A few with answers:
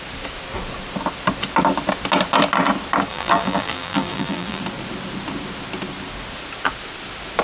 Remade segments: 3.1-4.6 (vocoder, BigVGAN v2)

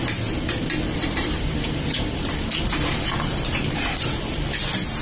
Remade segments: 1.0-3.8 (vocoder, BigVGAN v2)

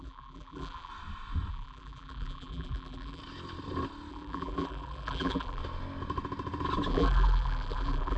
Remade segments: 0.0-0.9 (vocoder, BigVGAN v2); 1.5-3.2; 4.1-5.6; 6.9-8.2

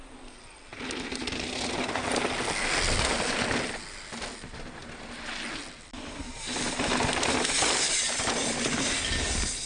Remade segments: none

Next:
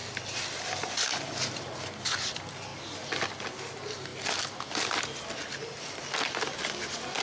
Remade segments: none